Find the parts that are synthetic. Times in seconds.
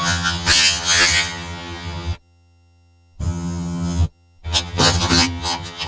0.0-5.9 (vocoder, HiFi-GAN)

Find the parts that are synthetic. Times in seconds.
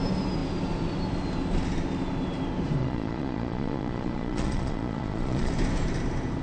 2.8-5.5 (vocoder, Vocos)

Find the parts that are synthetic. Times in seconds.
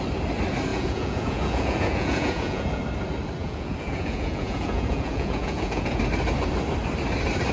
0.7-2.8 (vocoder, Vocos); 3.4-6.0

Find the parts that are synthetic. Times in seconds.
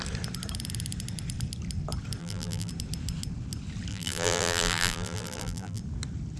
2.2-2.7 (vocoder, BigVGAN v2); 3.9-5.8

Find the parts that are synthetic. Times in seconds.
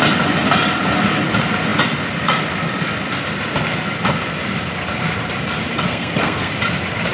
5.9-6.5 (codec, SNAC)